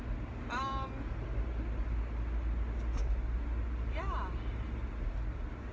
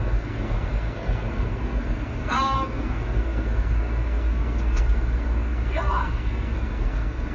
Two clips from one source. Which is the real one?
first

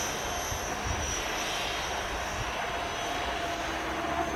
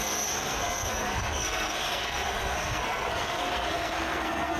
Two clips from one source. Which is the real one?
first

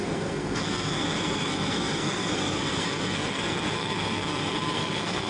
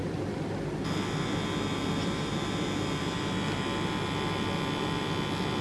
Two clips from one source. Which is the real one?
second